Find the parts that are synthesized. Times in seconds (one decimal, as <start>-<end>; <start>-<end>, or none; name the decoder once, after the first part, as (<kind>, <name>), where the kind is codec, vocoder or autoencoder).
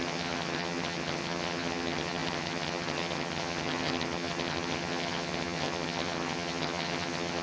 0.0-7.4 (vocoder, HiFi-GAN)